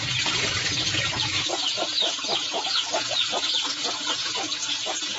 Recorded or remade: remade